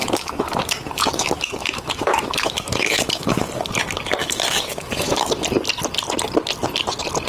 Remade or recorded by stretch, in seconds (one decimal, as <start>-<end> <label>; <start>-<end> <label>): 0.0-3.5 remade; 3.5-4.2 recorded; 4.2-5.3 remade; 5.3-7.3 recorded